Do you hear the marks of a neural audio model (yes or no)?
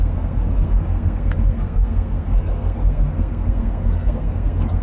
yes